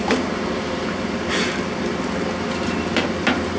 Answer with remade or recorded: recorded